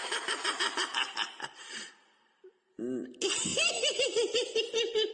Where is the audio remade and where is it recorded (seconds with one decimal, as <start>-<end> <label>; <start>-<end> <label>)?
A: 0.0-2.8 remade; 2.8-3.5 recorded; 3.5-4.6 remade; 4.6-5.1 recorded